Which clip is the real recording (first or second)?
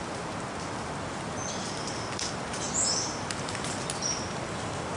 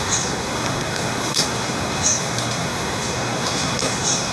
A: first